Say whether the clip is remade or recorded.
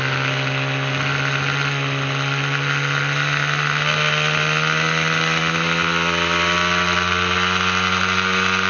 recorded